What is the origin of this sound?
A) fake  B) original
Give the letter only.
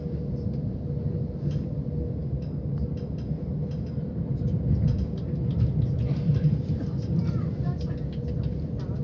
B